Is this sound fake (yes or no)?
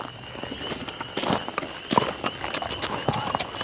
no